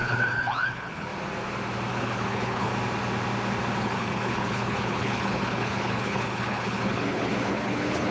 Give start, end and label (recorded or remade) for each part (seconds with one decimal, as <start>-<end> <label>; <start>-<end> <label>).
0.0-1.1 remade; 1.1-1.9 recorded; 1.9-2.7 remade; 2.7-3.8 recorded; 3.8-8.1 remade